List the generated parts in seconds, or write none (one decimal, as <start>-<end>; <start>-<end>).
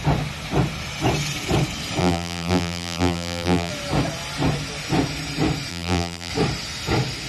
2.0-3.7; 5.7-6.3